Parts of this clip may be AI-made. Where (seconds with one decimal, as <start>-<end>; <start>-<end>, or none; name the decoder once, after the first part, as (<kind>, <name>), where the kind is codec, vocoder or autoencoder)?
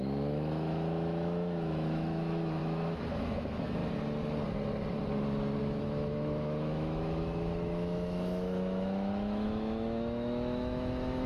0.0-3.8 (autoencoder, DAC-VAE); 5.6-11.3